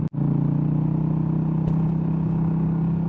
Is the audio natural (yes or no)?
yes